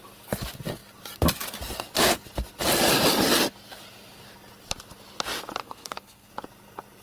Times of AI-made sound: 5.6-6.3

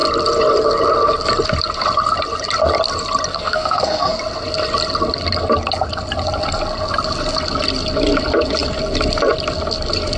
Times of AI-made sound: 3.3-4.2